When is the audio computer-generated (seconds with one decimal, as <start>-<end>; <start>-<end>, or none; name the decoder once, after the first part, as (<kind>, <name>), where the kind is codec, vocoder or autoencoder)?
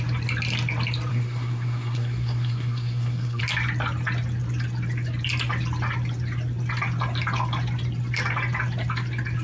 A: 1.1-3.4 (codec, SNAC)